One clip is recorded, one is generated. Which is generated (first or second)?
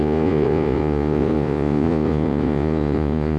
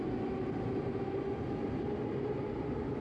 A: first